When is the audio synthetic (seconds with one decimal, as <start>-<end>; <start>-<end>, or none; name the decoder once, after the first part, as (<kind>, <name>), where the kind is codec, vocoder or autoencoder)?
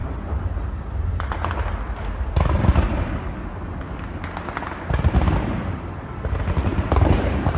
0.0-1.5 (vocoder, BigVGAN v2); 6.7-7.6